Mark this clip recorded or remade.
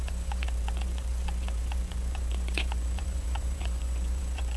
remade